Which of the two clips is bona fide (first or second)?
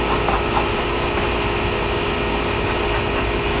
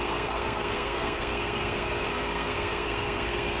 first